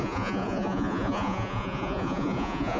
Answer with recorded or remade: remade